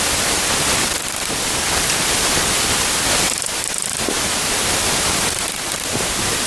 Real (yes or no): yes